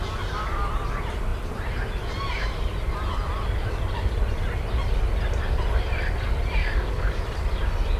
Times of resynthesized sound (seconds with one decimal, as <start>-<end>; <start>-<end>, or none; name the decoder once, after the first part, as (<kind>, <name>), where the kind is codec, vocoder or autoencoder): 6.6-7.2 (codec, DAC)